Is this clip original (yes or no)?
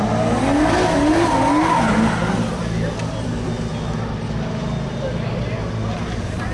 yes